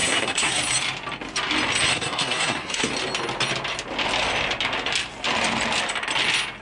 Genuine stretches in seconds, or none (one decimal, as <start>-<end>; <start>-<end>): 0.6-1.9; 2.9-6.6